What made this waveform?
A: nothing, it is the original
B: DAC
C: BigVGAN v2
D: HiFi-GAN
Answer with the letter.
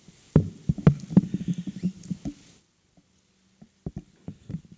A